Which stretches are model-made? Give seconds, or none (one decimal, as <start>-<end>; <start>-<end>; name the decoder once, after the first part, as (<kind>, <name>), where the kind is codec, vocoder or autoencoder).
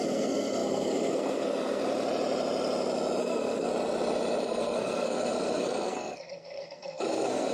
0.0-1.8 (codec, SNAC); 3.2-3.7; 4.4-7.5